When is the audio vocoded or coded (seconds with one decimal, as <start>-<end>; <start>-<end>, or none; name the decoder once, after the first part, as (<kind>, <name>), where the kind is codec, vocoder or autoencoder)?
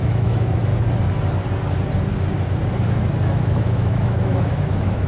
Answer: 0.0-0.7 (autoencoder, DAC-VAE); 3.3-5.1